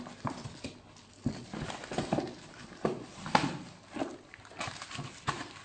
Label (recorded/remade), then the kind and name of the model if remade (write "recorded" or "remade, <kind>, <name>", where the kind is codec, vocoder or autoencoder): recorded